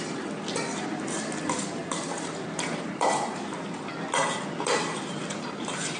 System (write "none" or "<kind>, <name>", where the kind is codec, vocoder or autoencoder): vocoder, BigVGAN v2